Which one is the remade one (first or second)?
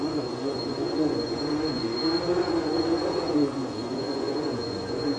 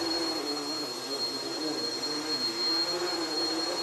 first